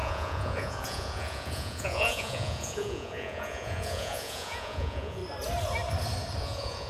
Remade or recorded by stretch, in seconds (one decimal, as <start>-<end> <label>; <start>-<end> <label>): 0.0-5.2 remade; 5.2-6.4 recorded; 6.4-6.9 remade